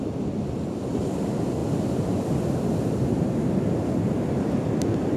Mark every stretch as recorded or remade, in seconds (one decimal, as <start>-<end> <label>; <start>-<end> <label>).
0.0-5.2 recorded